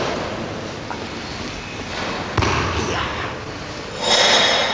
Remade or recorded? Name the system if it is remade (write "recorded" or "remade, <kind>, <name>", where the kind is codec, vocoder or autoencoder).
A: recorded